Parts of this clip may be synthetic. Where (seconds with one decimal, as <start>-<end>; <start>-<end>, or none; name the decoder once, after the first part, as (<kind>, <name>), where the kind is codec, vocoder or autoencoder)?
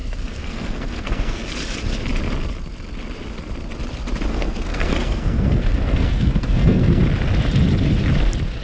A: 0.0-1.5 (codec, SNAC); 4.3-7.0